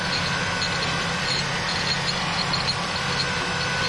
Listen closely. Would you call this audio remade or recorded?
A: recorded